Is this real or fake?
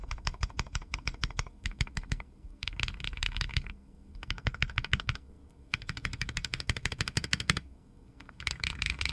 fake